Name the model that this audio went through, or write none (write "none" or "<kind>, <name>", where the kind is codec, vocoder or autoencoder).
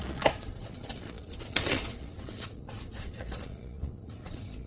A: vocoder, Vocos